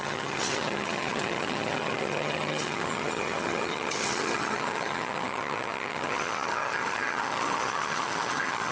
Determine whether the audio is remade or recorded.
remade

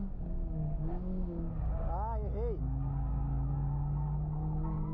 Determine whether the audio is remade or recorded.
recorded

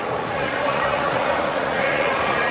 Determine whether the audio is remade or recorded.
remade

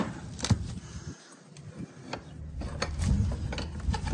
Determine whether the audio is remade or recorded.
recorded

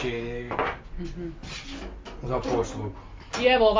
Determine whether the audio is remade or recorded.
recorded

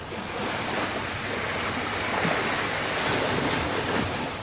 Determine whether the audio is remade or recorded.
recorded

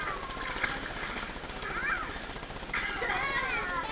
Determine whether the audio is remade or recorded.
recorded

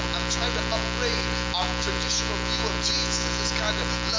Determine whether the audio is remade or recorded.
recorded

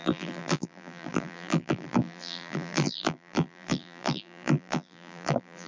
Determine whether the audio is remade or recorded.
remade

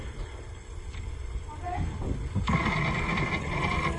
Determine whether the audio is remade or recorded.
recorded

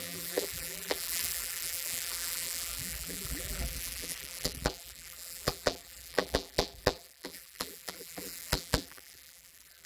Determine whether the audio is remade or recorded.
remade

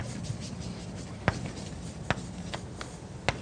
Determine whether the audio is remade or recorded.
recorded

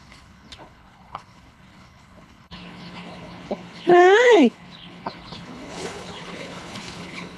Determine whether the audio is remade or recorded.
remade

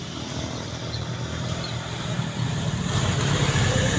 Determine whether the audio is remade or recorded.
remade